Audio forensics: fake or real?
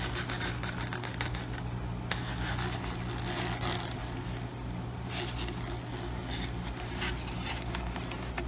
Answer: real